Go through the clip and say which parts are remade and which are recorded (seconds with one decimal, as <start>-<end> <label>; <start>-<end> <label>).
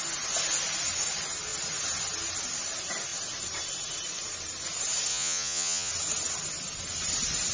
0.0-5.1 recorded; 5.1-5.9 remade; 5.9-7.5 recorded